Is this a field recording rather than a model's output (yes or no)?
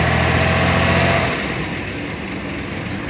yes